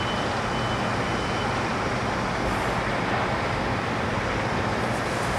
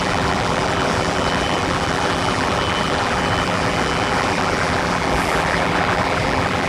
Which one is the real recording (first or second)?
first